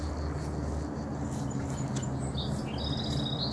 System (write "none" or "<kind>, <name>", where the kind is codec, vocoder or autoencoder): none